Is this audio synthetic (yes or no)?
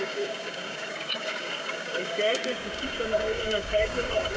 yes